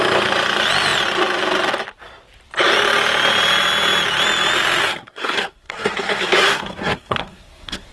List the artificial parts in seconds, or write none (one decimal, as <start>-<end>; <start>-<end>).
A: 4.8-7.9